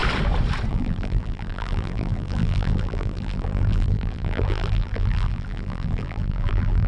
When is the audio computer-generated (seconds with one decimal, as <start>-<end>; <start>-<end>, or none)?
0.7-6.9